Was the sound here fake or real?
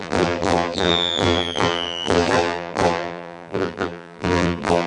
fake